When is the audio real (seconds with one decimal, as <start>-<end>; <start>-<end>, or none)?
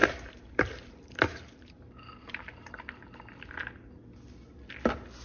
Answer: 2.8-5.2